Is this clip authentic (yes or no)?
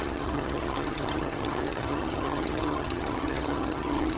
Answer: no